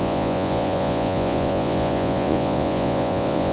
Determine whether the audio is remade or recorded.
remade